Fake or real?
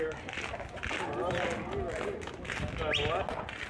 real